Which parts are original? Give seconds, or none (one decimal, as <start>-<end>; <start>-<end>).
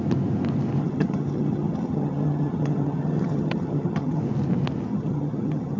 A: 0.0-0.8; 4.2-4.9